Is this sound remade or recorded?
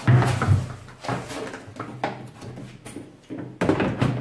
recorded